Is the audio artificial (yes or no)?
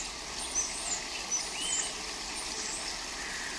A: no